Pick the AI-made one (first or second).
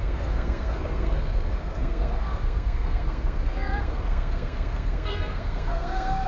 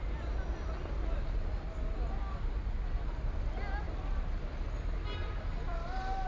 first